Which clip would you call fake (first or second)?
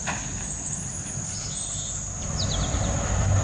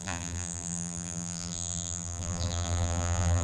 second